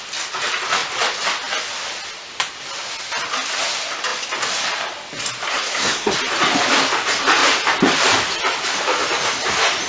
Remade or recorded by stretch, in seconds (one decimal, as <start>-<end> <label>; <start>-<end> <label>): 0.0-5.5 recorded; 5.5-6.1 remade; 6.1-9.9 recorded